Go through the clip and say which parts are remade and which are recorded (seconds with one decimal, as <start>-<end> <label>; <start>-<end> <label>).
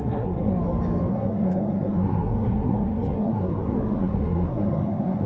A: 0.0-0.5 remade; 0.5-1.1 recorded; 1.1-5.3 remade